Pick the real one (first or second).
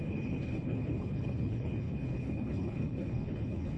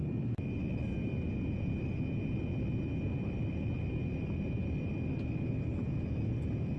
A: second